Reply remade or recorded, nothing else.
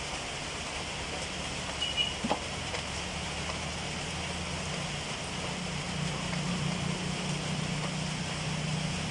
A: recorded